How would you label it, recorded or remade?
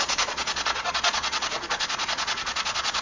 remade